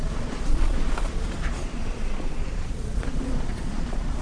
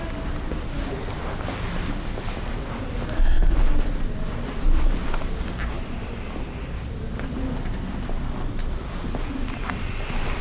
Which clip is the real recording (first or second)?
second